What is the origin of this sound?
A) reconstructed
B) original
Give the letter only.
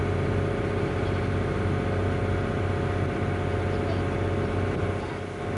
B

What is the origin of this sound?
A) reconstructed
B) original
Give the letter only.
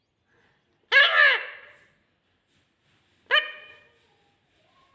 B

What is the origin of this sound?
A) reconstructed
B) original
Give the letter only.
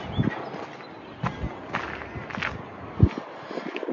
B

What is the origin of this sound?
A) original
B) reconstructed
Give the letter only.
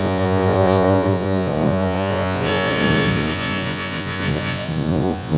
B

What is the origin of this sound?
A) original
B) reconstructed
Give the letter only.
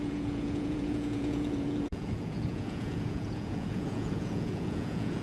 B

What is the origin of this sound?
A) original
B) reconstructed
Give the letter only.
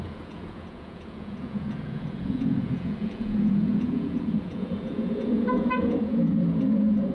B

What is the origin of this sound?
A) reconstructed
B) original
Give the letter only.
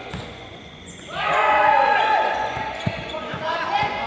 A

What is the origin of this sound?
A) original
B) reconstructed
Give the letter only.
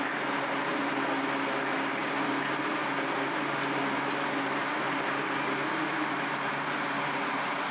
A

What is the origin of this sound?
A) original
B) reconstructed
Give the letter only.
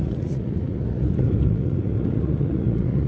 B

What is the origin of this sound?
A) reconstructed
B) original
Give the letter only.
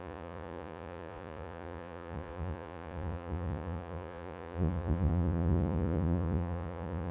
A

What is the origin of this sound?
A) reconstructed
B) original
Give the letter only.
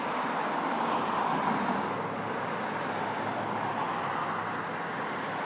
B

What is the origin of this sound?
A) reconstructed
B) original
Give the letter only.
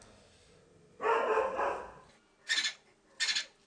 B